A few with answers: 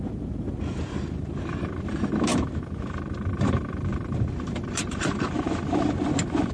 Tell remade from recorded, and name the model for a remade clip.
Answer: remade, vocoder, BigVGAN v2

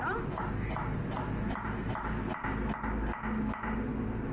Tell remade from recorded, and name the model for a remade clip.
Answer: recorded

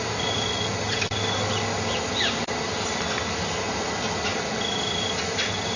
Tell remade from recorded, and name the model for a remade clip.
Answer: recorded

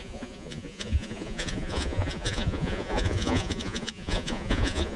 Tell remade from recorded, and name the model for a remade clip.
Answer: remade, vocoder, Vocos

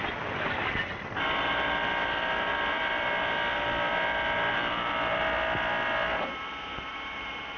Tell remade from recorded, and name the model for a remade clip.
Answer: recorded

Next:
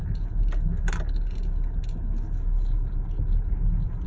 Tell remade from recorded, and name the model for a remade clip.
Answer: recorded